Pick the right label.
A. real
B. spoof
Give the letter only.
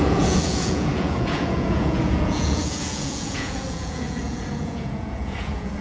B